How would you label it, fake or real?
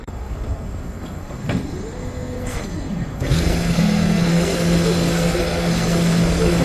fake